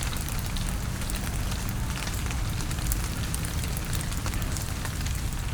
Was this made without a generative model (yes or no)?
yes